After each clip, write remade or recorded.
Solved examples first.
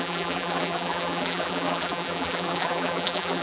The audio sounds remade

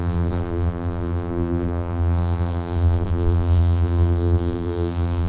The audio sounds remade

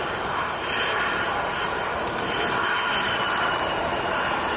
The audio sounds remade